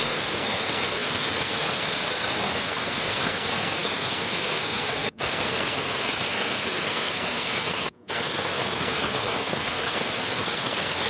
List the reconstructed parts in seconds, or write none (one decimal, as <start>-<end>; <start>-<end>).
0.0-11.1

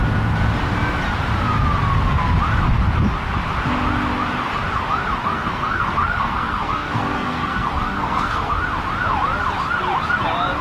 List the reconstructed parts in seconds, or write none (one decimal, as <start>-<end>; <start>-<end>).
5.2-8.6